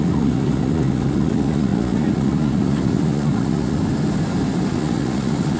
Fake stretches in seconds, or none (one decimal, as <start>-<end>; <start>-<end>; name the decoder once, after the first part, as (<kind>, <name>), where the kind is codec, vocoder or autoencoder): 0.0-3.8 (vocoder, Vocos); 4.7-5.6